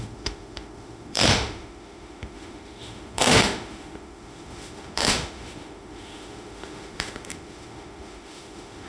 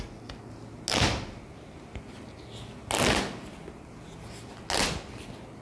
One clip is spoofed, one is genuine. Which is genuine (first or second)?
second